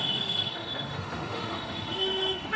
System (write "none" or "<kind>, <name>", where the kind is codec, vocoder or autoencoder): autoencoder, DAC-VAE